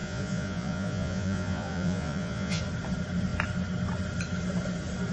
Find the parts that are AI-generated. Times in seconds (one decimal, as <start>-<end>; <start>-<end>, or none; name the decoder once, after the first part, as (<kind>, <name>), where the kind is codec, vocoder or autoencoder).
0.0-2.6 (vocoder, Vocos)